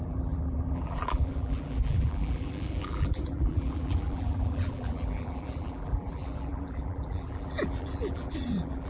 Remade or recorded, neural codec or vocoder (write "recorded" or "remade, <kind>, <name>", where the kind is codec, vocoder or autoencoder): remade, vocoder, BigVGAN v2